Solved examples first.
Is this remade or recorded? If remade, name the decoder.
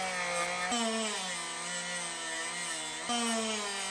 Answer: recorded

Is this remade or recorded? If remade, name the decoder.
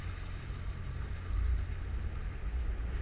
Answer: recorded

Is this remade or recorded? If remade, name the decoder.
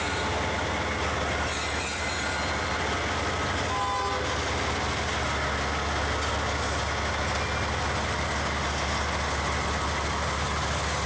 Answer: recorded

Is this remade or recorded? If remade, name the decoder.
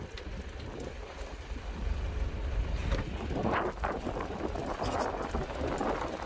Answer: recorded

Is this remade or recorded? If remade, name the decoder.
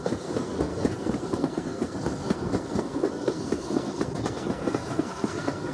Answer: remade, codec, SNAC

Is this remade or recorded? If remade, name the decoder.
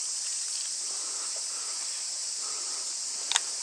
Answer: recorded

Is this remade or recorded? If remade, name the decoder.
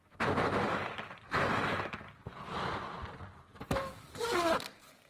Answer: recorded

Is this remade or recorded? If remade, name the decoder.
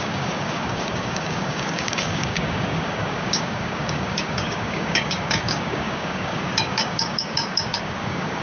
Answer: remade, codec, DAC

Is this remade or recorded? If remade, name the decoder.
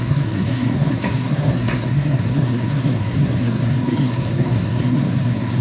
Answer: remade, codec, SNAC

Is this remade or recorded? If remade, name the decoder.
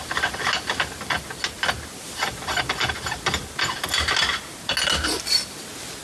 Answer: recorded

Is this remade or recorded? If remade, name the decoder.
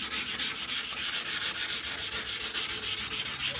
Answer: recorded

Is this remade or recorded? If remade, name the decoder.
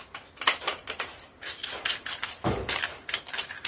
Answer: recorded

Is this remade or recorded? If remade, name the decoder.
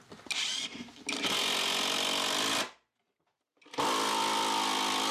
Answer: recorded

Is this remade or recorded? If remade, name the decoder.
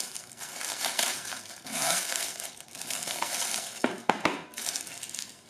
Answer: remade, codec, SNAC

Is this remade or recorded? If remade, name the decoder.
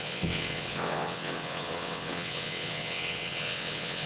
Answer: remade, vocoder, WaveNeXt